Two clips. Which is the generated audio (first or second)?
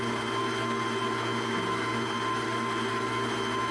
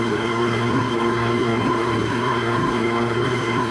second